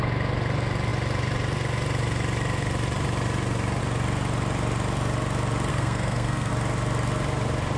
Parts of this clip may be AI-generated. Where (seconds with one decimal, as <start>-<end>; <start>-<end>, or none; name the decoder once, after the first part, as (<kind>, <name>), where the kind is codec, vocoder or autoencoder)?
5.7-6.5 (codec, SNAC)